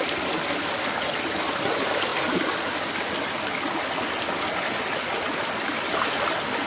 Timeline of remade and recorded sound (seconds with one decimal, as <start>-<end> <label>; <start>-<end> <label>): 0.0-6.7 recorded